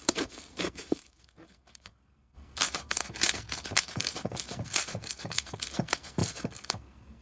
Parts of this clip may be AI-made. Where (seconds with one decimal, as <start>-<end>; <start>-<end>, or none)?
0.0-7.2